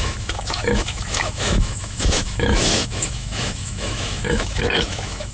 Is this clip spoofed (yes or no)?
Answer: yes